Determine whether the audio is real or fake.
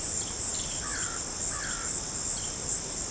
fake